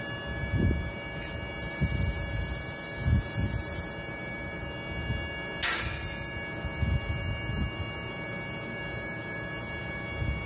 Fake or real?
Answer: real